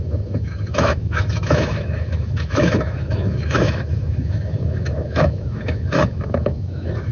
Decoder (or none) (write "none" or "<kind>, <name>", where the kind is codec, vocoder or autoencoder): autoencoder, DAC-VAE